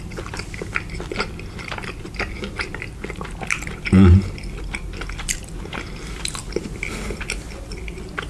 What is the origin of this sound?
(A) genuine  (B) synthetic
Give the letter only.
A